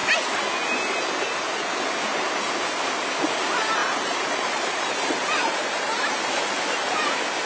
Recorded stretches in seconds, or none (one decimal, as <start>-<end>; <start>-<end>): 0.0-3.8; 6.3-7.5